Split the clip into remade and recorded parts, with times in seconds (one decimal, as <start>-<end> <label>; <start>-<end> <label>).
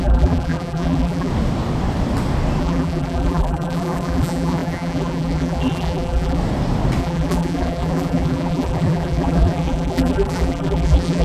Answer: 0.0-1.3 remade; 1.3-2.6 recorded; 2.6-6.4 remade; 6.4-7.0 recorded; 7.0-11.2 remade